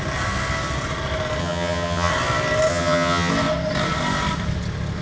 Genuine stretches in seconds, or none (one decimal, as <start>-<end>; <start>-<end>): 0.0-1.4; 2.1-2.7; 3.3-5.0